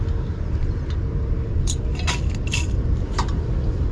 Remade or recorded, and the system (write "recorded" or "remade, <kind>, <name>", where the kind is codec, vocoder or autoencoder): recorded